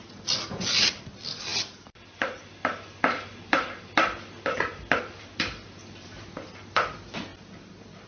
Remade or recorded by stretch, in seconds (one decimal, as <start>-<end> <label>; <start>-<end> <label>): 0.0-8.1 recorded